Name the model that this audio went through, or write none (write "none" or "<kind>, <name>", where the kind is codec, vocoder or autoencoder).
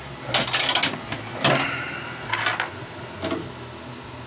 none